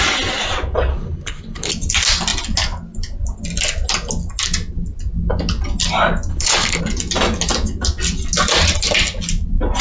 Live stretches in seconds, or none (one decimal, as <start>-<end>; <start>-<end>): 0.0-0.9; 1.7-6.3; 6.8-9.8